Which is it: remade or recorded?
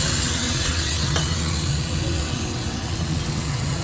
remade